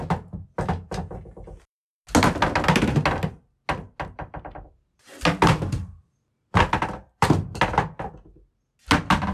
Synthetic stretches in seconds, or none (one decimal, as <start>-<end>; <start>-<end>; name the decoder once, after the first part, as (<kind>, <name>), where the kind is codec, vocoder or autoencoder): 7.0-7.6 (vocoder, BigVGAN v2)